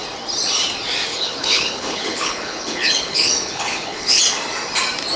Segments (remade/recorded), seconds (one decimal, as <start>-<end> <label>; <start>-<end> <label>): 0.0-1.1 recorded; 1.1-4.2 remade; 4.2-5.2 recorded